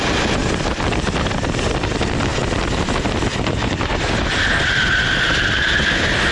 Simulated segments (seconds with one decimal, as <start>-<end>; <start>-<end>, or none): none